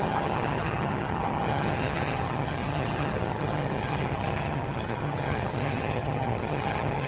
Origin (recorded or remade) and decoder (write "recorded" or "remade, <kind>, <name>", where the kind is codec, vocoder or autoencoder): remade, vocoder, HiFi-GAN